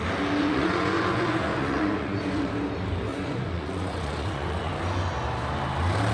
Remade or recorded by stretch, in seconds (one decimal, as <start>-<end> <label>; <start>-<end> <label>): 0.0-0.4 recorded; 0.4-2.5 remade; 2.5-3.1 recorded; 3.1-4.7 remade; 4.7-6.1 recorded